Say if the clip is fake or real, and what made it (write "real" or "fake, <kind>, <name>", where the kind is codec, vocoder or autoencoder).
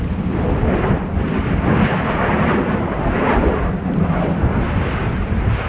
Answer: real